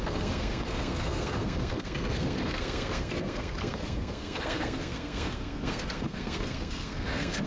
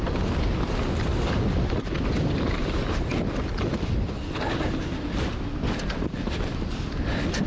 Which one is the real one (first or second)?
second